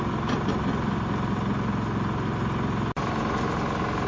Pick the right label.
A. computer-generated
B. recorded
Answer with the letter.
B